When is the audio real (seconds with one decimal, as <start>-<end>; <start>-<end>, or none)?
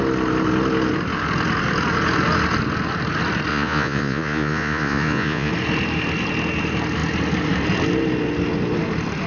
0.0-3.5; 5.5-9.3